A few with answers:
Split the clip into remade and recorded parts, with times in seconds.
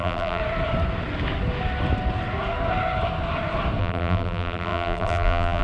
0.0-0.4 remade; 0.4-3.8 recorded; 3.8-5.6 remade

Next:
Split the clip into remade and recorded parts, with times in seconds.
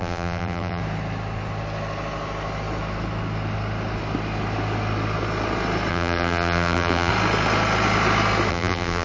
0.0-0.8 remade; 0.8-5.9 recorded; 5.9-7.1 remade; 7.1-8.5 recorded; 8.5-9.0 remade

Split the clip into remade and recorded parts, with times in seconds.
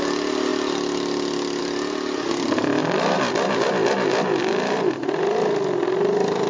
0.0-0.5 recorded; 0.5-1.6 remade; 1.6-2.8 recorded; 2.8-3.4 remade; 3.4-6.5 recorded